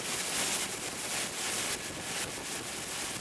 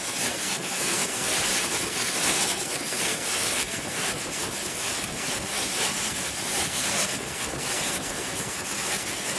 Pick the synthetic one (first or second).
second